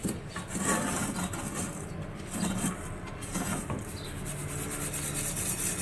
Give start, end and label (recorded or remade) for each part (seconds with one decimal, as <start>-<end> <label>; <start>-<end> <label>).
0.0-5.8 recorded